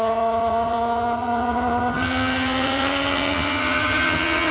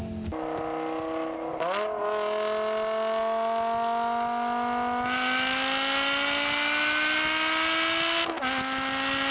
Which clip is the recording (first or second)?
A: second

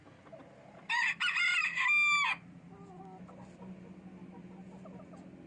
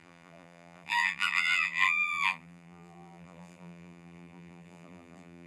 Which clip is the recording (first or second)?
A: first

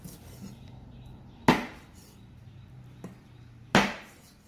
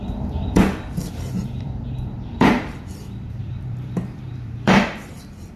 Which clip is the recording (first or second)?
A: first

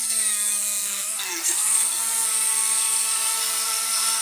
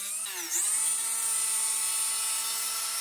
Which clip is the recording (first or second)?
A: second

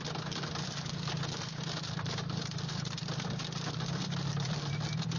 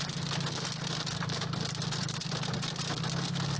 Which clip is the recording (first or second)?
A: second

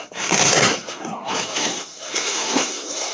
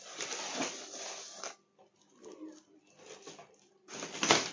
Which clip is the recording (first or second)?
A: second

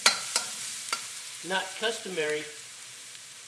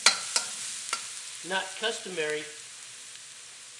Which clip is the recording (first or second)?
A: second